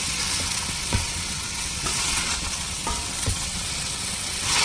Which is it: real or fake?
fake